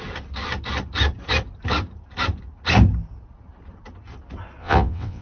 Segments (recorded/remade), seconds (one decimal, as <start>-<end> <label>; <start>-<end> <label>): 0.0-4.6 recorded; 4.6-5.2 remade